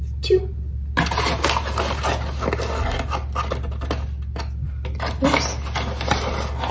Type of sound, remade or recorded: recorded